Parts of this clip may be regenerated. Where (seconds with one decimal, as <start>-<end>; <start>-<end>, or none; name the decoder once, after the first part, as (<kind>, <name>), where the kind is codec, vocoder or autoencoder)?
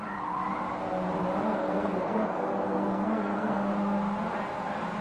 1.4-3.7 (codec, SNAC)